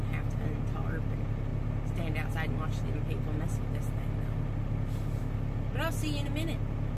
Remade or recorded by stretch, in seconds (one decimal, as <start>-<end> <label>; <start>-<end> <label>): 0.0-7.0 recorded